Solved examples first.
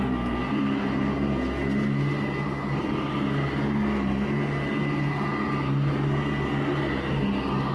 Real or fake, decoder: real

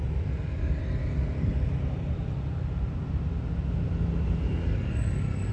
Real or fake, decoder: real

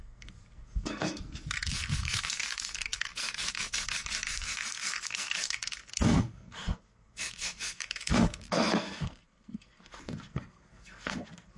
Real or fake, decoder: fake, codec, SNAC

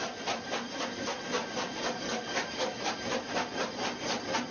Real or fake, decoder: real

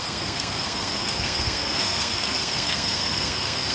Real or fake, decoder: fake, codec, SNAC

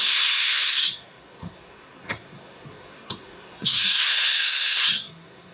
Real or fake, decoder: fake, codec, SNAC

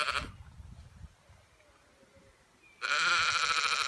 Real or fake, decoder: real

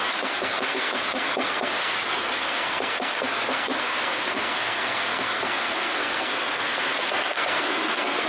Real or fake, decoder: fake, codec, SNAC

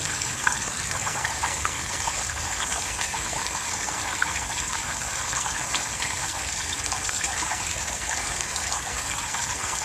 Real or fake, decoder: fake, codec, SNAC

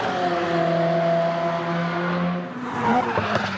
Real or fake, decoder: real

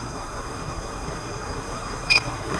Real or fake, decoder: fake, codec, SNAC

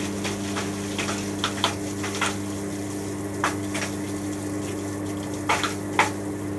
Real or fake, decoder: real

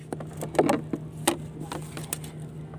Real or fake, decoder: real